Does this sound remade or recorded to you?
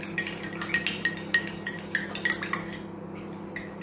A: recorded